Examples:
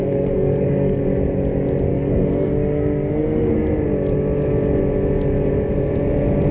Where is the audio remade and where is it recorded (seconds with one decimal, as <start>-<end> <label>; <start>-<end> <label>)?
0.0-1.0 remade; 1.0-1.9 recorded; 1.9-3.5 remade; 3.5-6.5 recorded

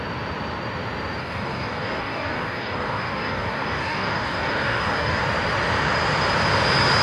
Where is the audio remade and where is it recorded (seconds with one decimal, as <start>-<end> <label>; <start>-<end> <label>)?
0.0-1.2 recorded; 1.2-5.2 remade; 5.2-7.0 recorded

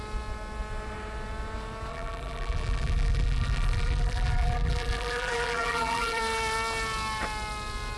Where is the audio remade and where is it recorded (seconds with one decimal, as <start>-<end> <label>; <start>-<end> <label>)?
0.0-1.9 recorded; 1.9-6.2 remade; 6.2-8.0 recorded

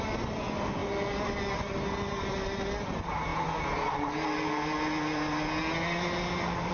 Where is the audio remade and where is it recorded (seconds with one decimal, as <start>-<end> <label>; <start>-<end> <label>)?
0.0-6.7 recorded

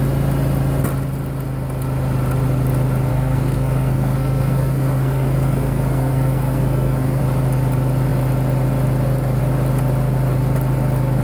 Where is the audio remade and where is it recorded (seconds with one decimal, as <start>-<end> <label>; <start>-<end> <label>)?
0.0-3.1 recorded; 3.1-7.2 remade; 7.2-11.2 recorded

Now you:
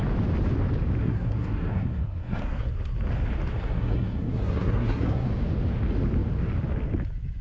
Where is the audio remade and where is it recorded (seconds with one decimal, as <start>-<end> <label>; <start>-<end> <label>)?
0.0-1.0 recorded; 1.0-2.7 remade; 2.7-3.5 recorded; 3.5-5.3 remade; 5.3-7.4 recorded